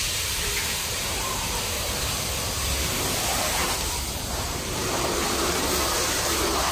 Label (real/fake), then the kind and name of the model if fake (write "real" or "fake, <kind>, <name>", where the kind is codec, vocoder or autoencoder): fake, vocoder, BigVGAN v2